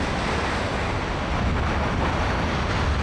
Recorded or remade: recorded